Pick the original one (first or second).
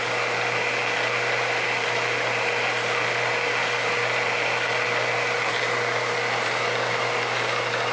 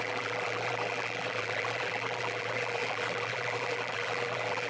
first